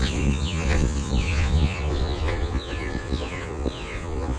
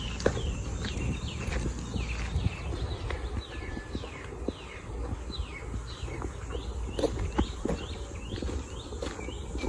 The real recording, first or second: second